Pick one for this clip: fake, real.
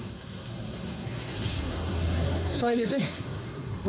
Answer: fake